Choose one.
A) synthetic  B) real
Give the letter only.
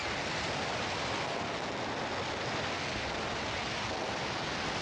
B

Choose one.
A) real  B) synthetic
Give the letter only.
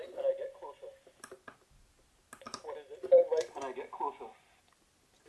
A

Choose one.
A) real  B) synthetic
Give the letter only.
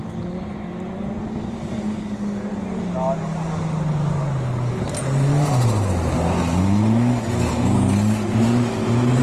A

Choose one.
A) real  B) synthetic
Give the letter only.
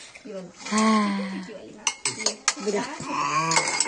A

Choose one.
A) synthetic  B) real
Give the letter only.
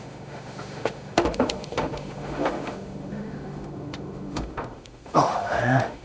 A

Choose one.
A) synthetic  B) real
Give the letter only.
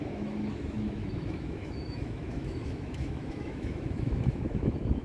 A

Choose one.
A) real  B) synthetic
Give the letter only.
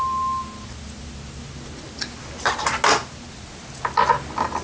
A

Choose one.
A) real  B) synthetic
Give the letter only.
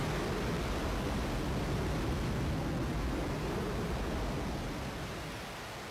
A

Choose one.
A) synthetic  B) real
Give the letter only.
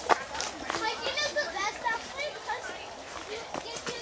B